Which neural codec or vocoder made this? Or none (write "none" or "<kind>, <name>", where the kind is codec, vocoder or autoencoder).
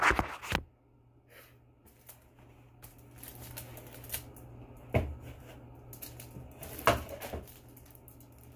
none